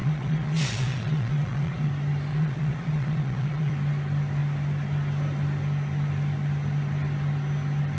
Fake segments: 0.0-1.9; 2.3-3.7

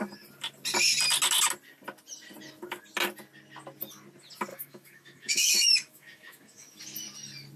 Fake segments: 4.5-6.8

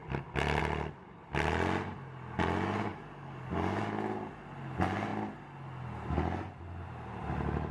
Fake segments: 2.9-3.8

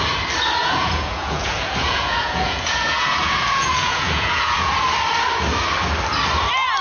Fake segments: 0.6-4.7

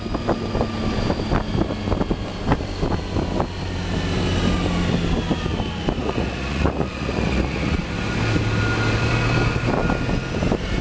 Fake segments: 6.0-7.8

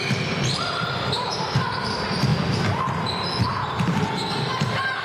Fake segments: 0.0-2.3; 3.4-5.0